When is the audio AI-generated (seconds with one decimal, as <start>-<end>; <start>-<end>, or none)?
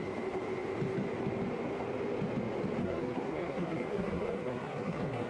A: 2.8-5.3